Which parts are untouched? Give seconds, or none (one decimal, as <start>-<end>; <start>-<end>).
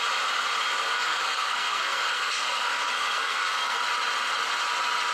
0.0-0.7; 3.8-5.1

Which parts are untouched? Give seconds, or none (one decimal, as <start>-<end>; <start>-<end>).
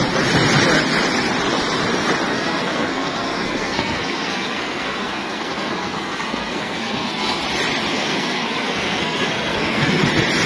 0.0-2.3; 7.4-7.9; 10.0-10.5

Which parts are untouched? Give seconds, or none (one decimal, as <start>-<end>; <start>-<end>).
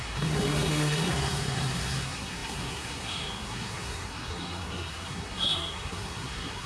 none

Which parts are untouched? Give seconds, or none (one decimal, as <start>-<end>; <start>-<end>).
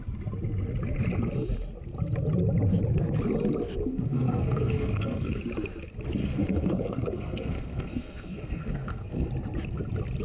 0.0-3.9; 5.4-6.2; 9.3-10.2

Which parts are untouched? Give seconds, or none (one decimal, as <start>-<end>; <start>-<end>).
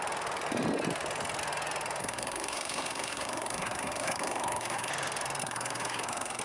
0.0-2.0; 4.9-5.4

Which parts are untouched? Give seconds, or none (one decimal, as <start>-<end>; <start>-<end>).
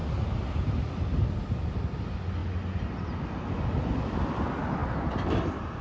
0.0-5.8